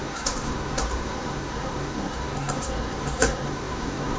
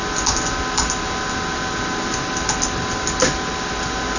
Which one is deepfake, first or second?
first